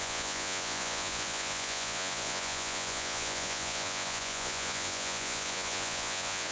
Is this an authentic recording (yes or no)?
no